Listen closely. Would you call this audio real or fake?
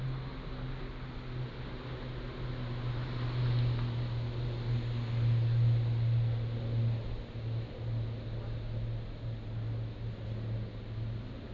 real